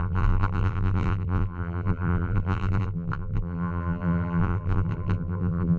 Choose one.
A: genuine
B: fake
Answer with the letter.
B